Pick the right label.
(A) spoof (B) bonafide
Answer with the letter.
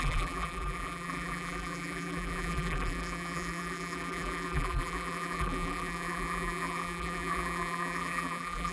A